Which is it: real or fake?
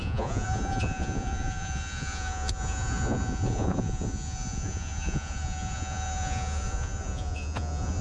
fake